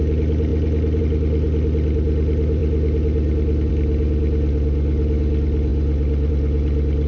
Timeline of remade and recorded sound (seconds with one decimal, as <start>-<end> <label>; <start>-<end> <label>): 0.0-7.1 recorded